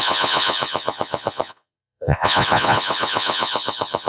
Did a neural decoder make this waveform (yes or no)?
yes